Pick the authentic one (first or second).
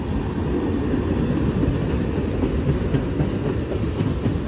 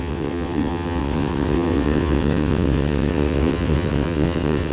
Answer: first